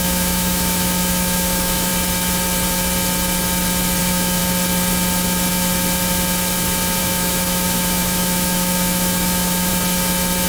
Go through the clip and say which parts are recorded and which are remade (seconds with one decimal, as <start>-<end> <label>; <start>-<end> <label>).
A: 0.0-1.9 remade; 1.9-4.0 recorded; 4.0-4.4 remade; 4.4-7.0 recorded; 7.0-9.7 remade; 9.7-10.5 recorded